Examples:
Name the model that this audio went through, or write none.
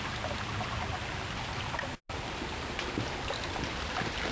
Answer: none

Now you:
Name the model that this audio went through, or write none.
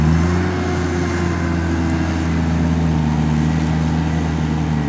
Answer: none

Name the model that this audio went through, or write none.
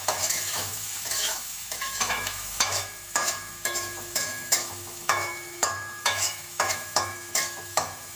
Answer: autoencoder, DAC-VAE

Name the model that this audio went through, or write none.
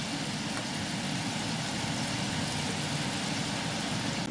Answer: none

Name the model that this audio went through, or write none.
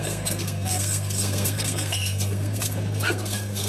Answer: codec, SNAC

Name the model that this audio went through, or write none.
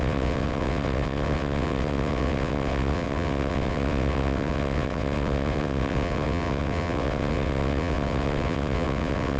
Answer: vocoder, WaveNeXt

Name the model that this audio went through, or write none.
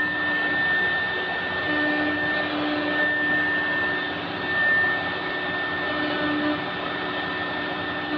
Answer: none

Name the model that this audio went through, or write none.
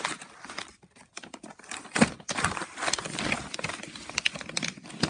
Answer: vocoder, BigVGAN v2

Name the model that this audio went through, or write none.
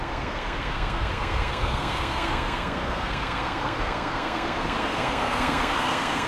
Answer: codec, SNAC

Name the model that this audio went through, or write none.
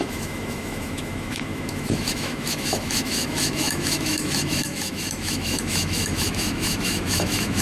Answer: autoencoder, DAC-VAE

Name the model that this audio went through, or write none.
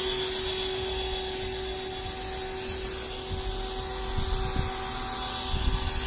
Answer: none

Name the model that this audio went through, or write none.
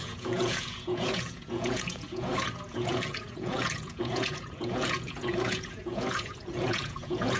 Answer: vocoder, Vocos